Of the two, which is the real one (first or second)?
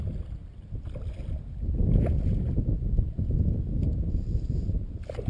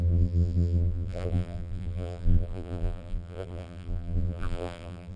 first